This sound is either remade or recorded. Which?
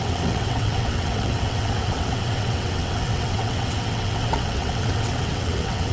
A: remade